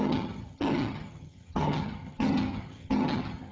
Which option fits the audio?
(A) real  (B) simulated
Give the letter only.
B